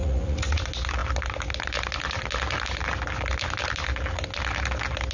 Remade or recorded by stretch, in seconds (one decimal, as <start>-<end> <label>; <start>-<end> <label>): 0.0-0.6 remade; 0.6-5.1 recorded